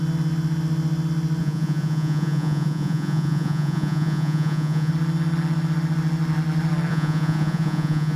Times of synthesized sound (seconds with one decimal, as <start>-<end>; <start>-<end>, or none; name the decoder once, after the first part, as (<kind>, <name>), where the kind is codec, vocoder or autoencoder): 1.4-4.9 (vocoder, Vocos); 6.9-8.2